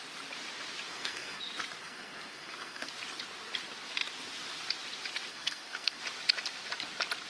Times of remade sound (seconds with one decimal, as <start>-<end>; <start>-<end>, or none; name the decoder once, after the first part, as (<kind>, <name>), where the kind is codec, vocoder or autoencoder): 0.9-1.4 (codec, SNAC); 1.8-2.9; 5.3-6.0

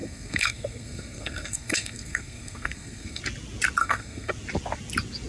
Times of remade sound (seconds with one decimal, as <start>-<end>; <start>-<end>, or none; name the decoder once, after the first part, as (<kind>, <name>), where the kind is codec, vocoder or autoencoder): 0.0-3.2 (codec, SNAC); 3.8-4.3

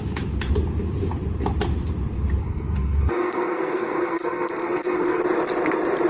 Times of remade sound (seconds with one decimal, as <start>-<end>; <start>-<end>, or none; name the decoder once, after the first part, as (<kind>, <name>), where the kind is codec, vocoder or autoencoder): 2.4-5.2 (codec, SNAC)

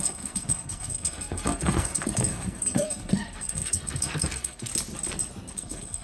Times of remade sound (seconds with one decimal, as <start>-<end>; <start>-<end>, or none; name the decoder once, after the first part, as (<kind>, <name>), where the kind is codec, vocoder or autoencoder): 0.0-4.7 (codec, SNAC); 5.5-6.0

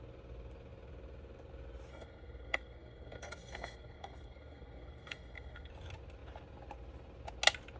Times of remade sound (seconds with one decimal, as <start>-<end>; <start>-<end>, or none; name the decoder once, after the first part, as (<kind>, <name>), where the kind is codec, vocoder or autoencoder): 1.9-5.7 (codec, SNAC)